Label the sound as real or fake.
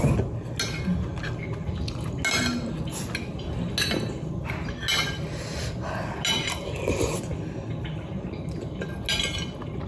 real